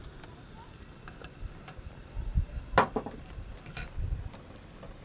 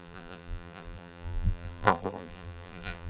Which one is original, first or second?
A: first